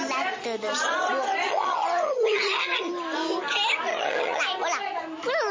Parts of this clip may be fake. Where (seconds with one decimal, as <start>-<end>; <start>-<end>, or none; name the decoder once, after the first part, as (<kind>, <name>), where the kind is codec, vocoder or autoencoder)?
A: 1.5-2.9 (vocoder, HiFi-GAN); 3.9-4.4